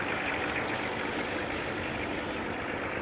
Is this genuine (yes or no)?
yes